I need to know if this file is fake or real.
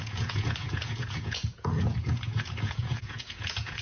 fake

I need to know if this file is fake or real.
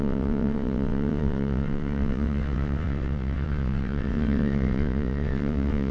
fake